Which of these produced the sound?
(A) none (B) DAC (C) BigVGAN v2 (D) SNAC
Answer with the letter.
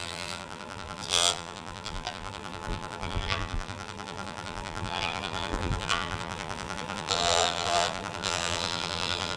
C